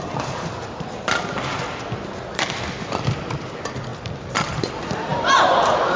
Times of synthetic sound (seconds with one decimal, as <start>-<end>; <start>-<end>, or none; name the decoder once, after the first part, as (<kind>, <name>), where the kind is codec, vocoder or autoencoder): 0.0-3.9 (vocoder, BigVGAN v2); 4.5-6.0